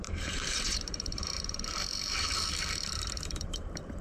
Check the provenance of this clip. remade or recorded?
remade